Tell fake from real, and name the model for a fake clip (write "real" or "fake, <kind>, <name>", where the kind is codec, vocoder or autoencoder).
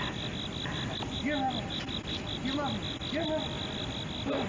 real